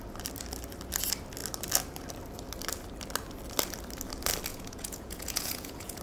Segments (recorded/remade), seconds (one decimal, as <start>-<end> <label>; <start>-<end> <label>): 0.0-4.5 recorded; 4.5-6.0 remade